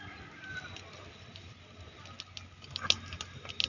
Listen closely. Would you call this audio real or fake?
real